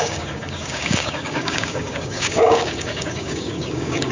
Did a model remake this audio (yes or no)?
yes